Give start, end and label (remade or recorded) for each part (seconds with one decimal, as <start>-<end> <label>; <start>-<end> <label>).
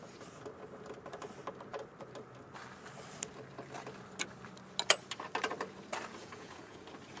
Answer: 0.0-6.2 recorded; 6.2-6.8 remade; 6.8-7.2 recorded